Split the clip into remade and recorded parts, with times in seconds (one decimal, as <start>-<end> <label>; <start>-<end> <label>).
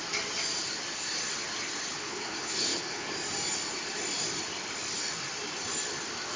0.0-1.9 recorded; 1.9-3.1 remade; 3.1-6.4 recorded